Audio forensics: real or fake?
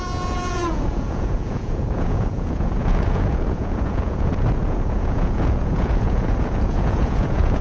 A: fake